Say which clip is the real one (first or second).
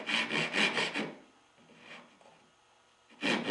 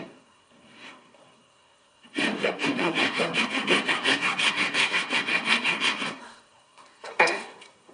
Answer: first